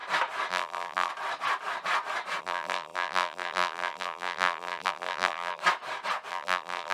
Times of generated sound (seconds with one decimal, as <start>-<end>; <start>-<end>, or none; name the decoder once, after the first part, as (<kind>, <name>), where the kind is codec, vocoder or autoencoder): 0.5-1.1 (vocoder, BigVGAN v2); 2.4-5.6; 6.3-6.9